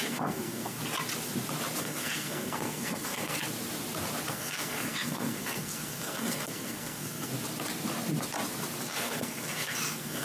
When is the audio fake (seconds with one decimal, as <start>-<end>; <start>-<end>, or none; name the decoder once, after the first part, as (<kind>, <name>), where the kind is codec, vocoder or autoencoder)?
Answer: 0.0-0.8 (codec, SNAC); 1.8-3.4; 4.3-7.3; 8.8-10.2